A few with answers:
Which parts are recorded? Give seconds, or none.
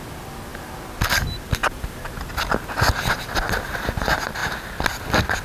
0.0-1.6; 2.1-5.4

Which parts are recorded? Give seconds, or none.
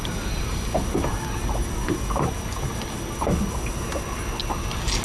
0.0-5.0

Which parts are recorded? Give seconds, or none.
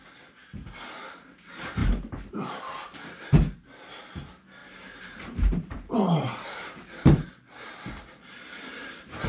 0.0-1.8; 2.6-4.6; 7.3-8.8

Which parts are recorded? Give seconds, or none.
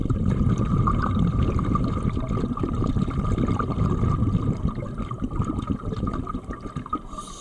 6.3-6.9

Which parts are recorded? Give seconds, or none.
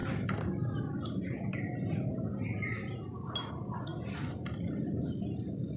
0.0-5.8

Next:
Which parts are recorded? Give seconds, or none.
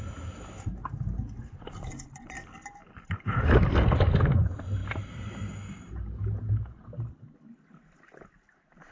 0.0-8.9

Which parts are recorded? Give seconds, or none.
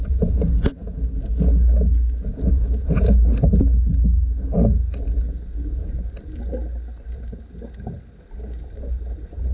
0.8-2.5; 3.5-8.6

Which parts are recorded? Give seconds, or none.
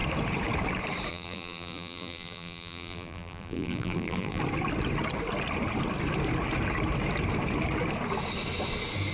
0.0-1.1; 4.4-9.1